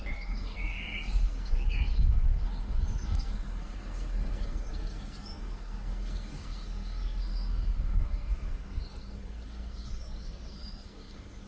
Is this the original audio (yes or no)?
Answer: no